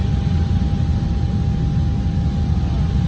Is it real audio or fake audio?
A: real